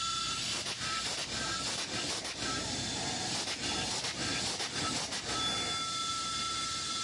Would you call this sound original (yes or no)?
yes